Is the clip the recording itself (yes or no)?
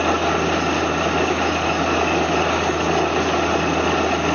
yes